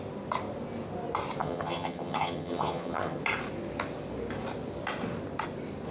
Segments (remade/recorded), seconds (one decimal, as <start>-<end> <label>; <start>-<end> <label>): 0.0-1.4 recorded; 1.4-3.2 remade; 3.2-5.9 recorded